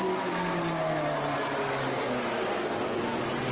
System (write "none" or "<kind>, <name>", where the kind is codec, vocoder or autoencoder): none